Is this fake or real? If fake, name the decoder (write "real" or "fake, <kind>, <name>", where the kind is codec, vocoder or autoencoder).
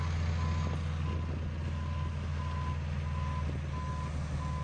real